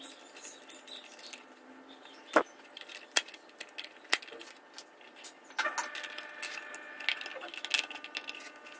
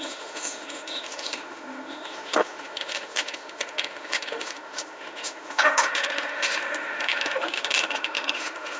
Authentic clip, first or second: first